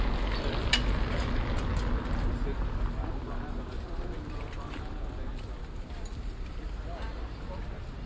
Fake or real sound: real